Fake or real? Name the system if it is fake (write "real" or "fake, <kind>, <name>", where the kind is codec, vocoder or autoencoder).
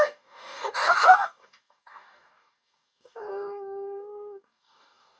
fake, codec, DAC